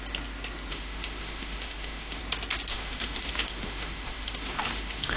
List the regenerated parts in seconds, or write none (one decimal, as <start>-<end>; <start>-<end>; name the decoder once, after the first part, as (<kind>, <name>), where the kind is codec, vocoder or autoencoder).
0.7-2.2 (autoencoder, DAC-VAE); 2.7-5.2